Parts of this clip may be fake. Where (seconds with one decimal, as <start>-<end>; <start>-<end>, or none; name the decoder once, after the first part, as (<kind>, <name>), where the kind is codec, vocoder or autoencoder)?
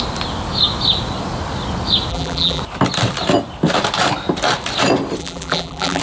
2.1-2.6 (vocoder, BigVGAN v2); 5.2-6.0